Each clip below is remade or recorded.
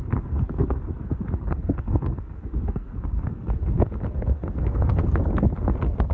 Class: remade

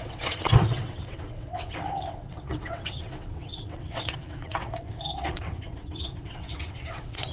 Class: remade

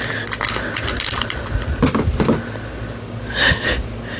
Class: recorded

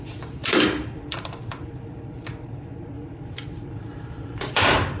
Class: remade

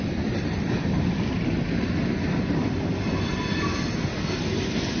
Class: recorded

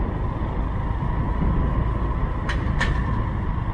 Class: recorded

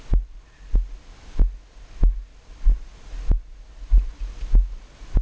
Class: recorded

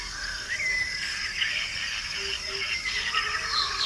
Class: remade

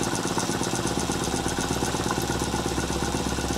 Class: recorded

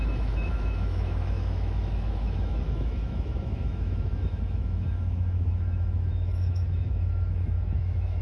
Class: remade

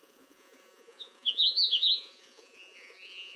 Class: remade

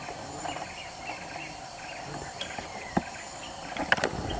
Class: recorded